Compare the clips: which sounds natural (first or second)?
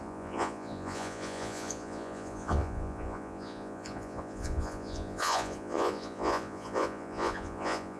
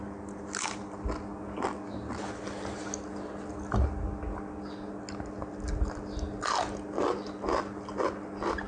second